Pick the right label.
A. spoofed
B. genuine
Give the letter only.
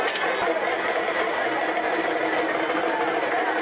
B